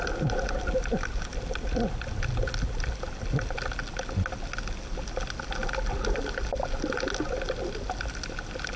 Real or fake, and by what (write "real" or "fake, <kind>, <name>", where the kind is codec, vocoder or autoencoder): real